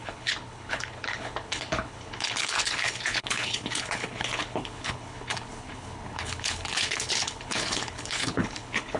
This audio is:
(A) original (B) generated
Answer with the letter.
B